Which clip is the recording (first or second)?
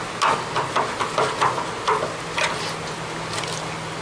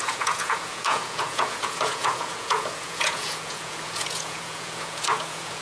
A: first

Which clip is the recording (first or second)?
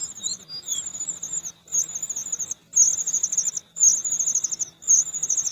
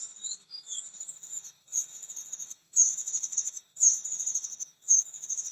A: first